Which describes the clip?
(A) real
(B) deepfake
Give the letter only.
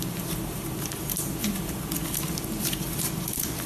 A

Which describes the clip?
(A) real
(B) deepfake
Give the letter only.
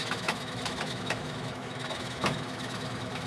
B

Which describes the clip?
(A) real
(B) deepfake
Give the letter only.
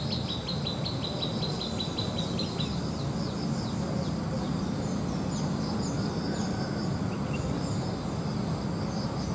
A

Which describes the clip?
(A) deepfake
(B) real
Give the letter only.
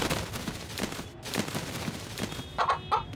B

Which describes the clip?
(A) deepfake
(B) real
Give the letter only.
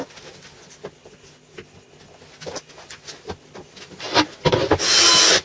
B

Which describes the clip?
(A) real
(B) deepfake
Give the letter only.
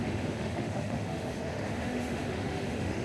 B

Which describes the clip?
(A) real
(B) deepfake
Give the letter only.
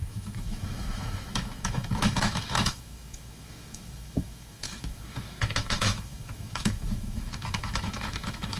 B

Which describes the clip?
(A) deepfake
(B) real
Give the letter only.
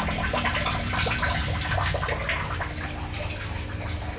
B